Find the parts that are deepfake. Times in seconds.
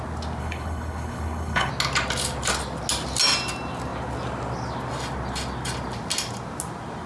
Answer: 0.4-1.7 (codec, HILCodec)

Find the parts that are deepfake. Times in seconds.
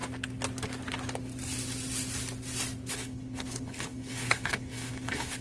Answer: 2.9-5.4 (codec, HILCodec)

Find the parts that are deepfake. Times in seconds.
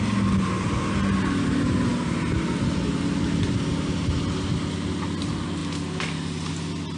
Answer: none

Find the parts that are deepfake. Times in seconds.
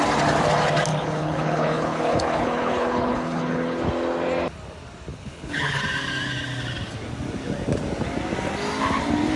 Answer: 0.9-3.8 (codec, HILCodec); 5.1-5.8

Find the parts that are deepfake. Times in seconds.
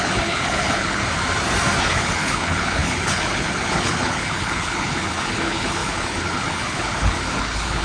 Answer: 0.0-1.0 (codec, HILCodec); 1.8-7.8